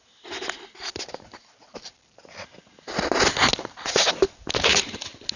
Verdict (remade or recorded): recorded